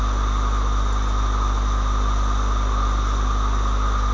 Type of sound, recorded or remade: recorded